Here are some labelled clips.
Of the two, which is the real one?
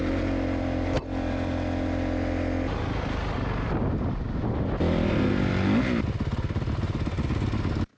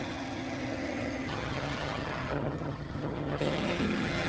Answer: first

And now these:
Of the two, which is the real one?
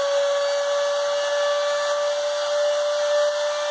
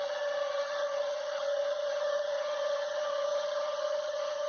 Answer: first